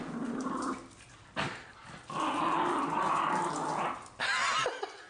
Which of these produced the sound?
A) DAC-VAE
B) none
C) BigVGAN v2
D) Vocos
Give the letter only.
B